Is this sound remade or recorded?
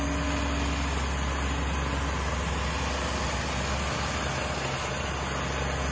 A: recorded